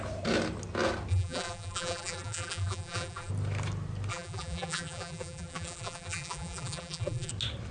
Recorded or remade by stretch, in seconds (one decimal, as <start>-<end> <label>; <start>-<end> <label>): 0.0-1.1 recorded; 1.1-3.3 remade; 3.3-4.1 recorded; 4.1-7.3 remade; 7.3-7.7 recorded

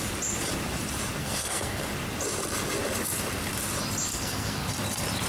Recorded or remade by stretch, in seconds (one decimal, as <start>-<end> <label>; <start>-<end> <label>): 0.0-1.2 recorded; 1.2-1.9 remade; 1.9-4.1 recorded; 4.1-4.7 remade; 4.7-5.3 recorded

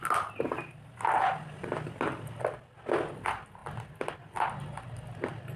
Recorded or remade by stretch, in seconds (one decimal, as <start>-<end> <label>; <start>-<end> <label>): 0.0-5.6 recorded

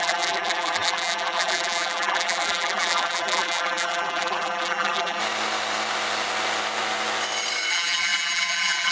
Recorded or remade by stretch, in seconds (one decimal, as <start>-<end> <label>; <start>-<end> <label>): 0.0-5.2 remade; 5.2-7.7 recorded; 7.7-8.9 remade

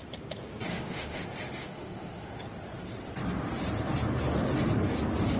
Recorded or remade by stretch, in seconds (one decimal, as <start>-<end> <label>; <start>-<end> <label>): 0.0-0.7 recorded; 0.7-1.2 remade; 1.2-1.6 recorded; 1.6-2.3 remade; 2.3-5.4 recorded

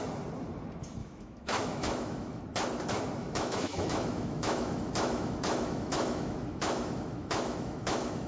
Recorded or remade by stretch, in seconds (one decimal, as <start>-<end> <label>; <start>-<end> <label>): 0.0-1.0 recorded; 1.0-2.4 remade; 2.4-3.2 recorded; 3.2-8.3 remade

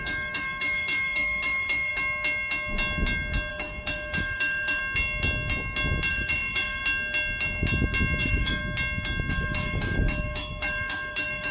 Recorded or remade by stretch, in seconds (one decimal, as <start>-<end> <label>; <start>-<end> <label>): 0.0-1.9 remade; 1.9-3.5 recorded; 3.5-4.8 remade; 4.8-6.1 recorded; 6.1-6.8 remade; 6.8-8.2 recorded; 8.2-8.6 remade; 8.6-9.3 recorded; 9.3-11.5 remade